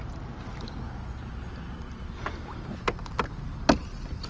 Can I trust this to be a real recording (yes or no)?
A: yes